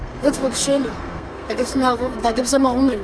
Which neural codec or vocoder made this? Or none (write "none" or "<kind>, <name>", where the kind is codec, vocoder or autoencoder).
codec, SNAC